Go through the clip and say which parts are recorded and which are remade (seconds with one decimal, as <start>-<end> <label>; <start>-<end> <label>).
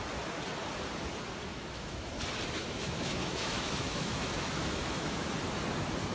0.0-1.5 recorded; 1.5-2.2 remade; 2.2-2.6 recorded; 2.6-5.3 remade; 5.3-6.1 recorded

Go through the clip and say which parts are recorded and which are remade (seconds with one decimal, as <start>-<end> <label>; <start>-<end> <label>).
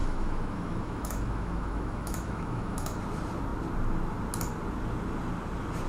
0.0-3.0 remade; 3.0-5.9 recorded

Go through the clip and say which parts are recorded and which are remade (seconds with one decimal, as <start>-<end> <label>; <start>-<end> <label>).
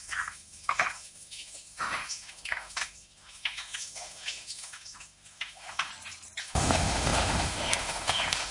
0.0-5.9 remade; 5.9-6.4 recorded; 6.4-8.5 remade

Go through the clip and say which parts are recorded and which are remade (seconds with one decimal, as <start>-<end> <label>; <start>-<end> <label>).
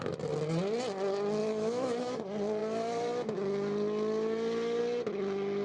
0.0-1.4 recorded; 1.4-2.2 remade; 2.2-5.6 recorded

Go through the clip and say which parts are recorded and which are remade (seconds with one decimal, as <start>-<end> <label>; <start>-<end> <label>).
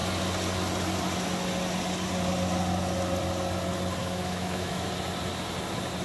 0.0-4.0 recorded; 4.0-4.9 remade; 4.9-6.0 recorded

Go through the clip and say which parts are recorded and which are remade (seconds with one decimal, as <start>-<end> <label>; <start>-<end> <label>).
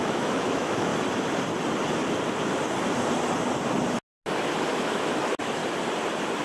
0.0-0.9 remade; 0.9-4.7 recorded; 4.7-5.6 remade; 5.6-6.4 recorded